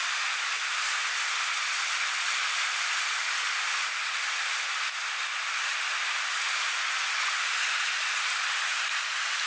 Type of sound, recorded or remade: recorded